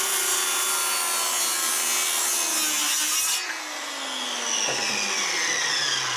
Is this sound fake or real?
real